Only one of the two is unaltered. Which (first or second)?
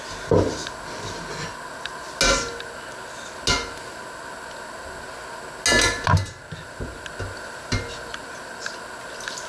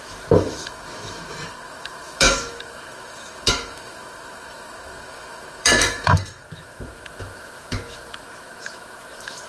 first